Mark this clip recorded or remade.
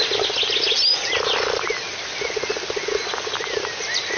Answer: recorded